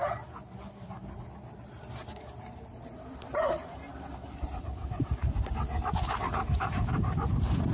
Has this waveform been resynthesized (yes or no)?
yes